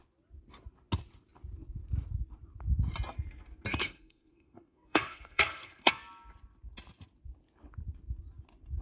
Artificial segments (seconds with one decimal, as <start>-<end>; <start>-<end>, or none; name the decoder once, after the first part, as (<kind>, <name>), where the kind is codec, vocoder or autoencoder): 3.7-6.0 (codec, SNAC)